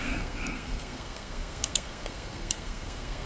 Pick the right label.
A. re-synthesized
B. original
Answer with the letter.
A